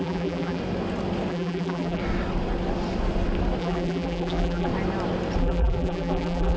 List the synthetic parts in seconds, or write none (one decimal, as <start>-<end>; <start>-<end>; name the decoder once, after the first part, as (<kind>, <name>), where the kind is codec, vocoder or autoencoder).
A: 0.0-0.6 (vocoder, BigVGAN v2); 1.3-2.0; 3.6-4.7; 5.4-6.6